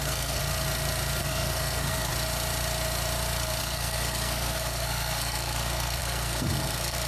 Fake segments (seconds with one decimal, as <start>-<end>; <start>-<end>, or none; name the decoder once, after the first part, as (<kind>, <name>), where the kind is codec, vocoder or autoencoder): 0.0-0.4 (codec, SNAC); 1.2-2.1; 3.6-7.1